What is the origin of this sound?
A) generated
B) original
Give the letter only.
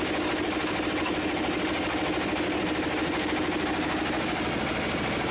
B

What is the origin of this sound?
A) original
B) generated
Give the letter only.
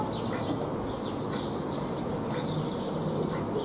A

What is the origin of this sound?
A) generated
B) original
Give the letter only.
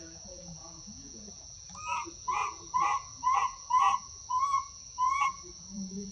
A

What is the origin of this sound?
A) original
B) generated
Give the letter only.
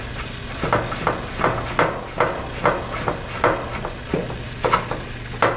A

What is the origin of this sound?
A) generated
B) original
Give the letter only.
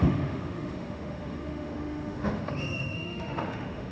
A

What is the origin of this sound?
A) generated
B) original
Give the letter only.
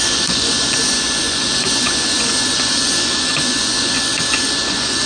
A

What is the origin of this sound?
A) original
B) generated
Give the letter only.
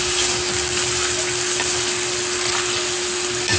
A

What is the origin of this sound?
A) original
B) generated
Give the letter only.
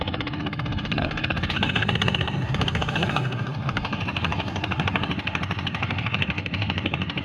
B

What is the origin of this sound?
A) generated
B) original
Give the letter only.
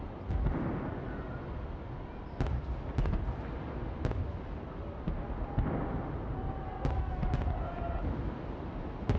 B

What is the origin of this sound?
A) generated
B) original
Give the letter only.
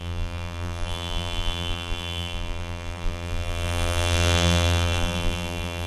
A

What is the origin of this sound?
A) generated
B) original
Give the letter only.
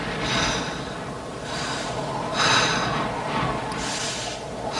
B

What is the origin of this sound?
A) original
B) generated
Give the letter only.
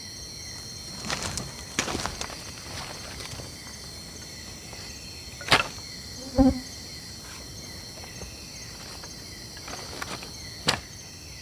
A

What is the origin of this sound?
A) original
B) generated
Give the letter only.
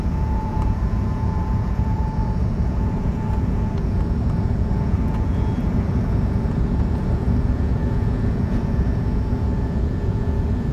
B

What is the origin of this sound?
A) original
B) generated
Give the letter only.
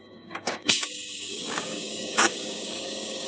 B